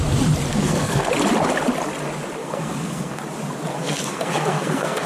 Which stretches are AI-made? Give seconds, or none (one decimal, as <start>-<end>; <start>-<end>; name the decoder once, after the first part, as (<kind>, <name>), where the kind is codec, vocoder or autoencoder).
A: 0.5-1.1 (codec, SNAC); 2.4-3.2; 3.7-5.1